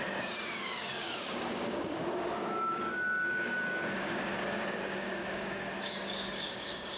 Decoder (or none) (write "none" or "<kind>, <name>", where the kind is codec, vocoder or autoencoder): codec, DAC